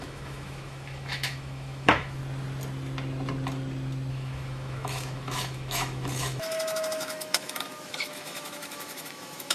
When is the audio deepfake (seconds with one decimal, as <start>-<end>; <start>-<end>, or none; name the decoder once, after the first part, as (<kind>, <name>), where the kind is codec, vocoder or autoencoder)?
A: 0.0-2.2 (autoencoder, DAC-VAE); 4.1-9.5